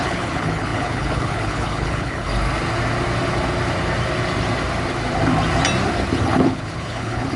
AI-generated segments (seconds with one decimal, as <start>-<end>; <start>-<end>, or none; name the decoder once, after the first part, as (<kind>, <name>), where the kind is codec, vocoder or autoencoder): 0.0-2.3 (codec, HILCodec); 6.2-7.4